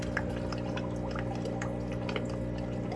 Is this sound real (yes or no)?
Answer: yes